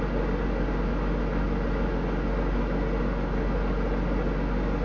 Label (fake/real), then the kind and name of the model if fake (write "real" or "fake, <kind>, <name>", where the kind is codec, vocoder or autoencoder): real